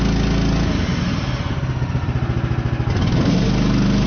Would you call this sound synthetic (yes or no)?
no